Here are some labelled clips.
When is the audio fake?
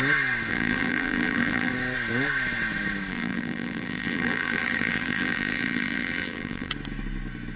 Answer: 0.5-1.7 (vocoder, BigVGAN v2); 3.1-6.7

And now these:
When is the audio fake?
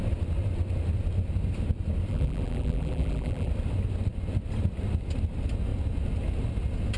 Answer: 2.1-3.5 (vocoder, BigVGAN v2)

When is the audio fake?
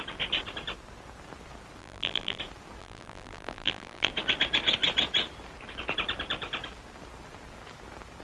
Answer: 1.8-2.4 (vocoder, BigVGAN v2); 2.8-4.1